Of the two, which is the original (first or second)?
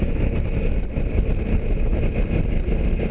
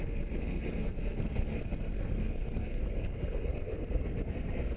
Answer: first